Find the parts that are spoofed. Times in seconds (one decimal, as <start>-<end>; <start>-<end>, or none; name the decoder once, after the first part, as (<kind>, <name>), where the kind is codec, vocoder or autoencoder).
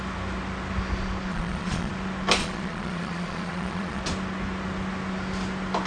1.3-1.9 (vocoder, Vocos); 2.4-4.0